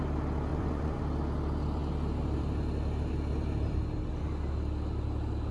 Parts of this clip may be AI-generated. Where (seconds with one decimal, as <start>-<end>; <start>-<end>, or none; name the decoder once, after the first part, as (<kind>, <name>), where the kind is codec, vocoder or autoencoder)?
0.5-1.0 (vocoder, Vocos)